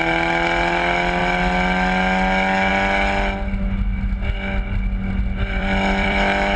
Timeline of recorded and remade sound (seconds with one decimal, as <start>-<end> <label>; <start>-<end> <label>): 0.0-5.6 recorded; 5.6-6.6 remade

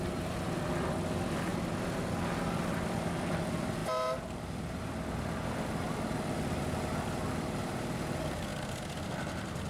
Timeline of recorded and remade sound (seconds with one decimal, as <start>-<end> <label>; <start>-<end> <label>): 0.0-1.5 remade; 1.5-2.7 recorded; 2.7-8.5 remade; 8.5-9.0 recorded; 9.0-9.7 remade

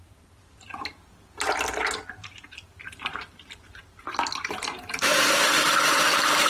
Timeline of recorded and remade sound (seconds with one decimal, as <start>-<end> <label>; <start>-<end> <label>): 0.0-1.8 remade; 1.8-2.7 recorded; 2.7-6.5 remade